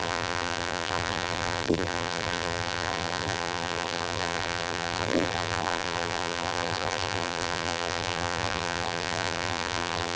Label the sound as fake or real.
fake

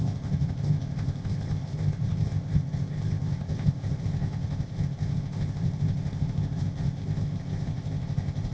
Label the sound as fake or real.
fake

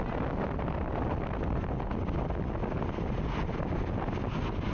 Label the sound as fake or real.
real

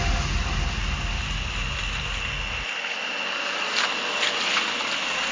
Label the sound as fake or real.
real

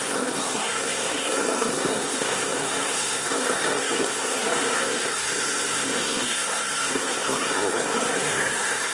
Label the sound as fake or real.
fake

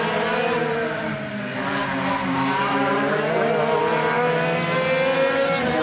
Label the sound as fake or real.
real